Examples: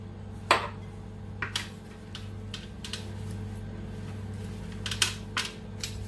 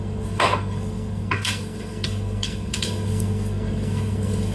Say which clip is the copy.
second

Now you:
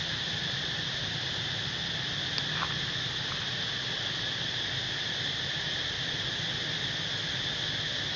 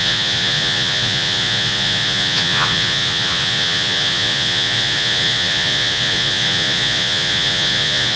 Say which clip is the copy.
second